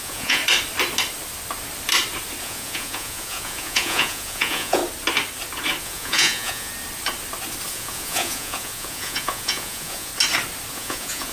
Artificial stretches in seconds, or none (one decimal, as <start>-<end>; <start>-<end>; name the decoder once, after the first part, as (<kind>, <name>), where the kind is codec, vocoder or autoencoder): 0.0-0.4 (vocoder, Vocos); 2.4-4.8; 5.8-6.7; 7.7-10.1; 10.7-11.3